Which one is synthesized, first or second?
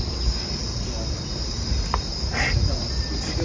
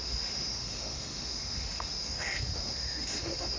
second